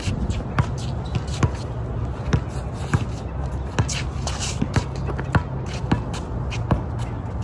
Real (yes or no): yes